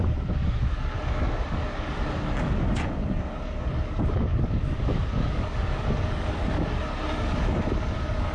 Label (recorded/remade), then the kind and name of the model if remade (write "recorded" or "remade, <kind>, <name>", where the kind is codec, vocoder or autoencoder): remade, codec, DAC